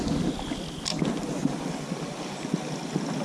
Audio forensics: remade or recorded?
recorded